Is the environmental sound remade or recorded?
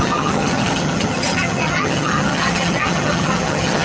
remade